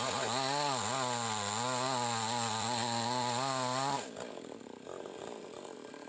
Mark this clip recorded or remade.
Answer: recorded